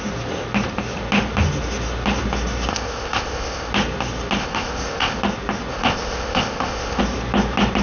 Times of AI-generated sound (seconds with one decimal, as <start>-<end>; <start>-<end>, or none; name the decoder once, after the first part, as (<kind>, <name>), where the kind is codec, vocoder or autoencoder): 2.7-3.7 (codec, ZipCodec); 4.4-5.2; 5.7-7.0